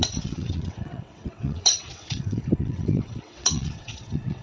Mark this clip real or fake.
fake